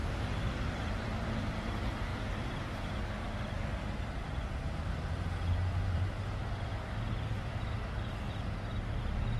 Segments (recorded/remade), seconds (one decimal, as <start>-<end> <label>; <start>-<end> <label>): 0.0-1.7 remade; 1.7-2.1 recorded; 2.1-3.0 remade; 3.0-3.8 recorded; 3.8-9.0 remade; 9.0-9.4 recorded